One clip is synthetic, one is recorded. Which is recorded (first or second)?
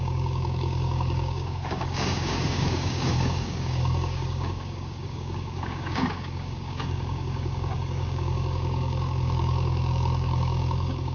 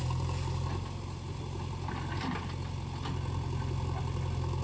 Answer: second